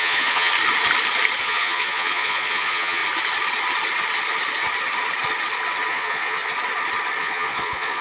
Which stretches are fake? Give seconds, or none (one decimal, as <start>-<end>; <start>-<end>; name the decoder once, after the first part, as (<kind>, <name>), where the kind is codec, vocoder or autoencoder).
0.0-0.5 (vocoder, Vocos); 1.4-3.0; 5.9-6.4; 7.2-8.0